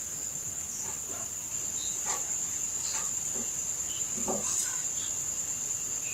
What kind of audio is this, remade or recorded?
recorded